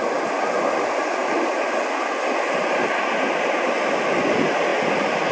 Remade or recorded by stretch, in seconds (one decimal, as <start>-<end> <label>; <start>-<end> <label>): 0.0-5.3 recorded